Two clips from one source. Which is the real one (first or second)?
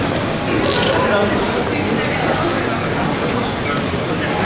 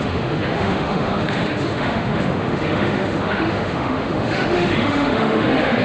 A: first